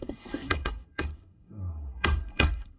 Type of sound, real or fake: fake